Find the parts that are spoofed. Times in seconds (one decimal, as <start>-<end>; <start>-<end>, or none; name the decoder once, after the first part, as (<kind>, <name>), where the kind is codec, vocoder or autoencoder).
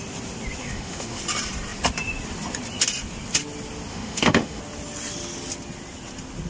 0.6-1.2 (autoencoder, DAC-VAE); 3.9-4.6